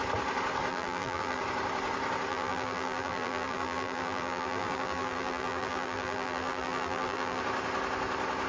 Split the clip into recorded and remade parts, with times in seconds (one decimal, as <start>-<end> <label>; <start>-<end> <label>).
0.0-0.7 recorded; 0.7-1.4 remade; 1.4-2.3 recorded; 2.3-7.4 remade; 7.4-8.5 recorded